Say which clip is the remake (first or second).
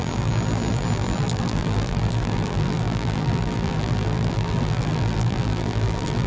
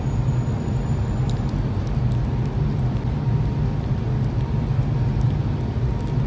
first